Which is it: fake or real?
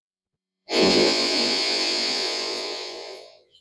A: fake